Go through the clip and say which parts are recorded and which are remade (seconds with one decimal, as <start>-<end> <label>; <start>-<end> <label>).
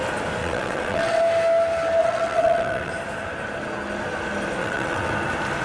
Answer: 0.0-0.4 recorded; 0.4-1.2 remade; 1.2-2.0 recorded; 2.0-2.9 remade; 2.9-4.6 recorded; 4.6-5.1 remade; 5.1-5.6 recorded